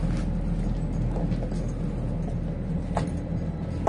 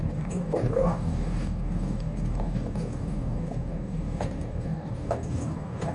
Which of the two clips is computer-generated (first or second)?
second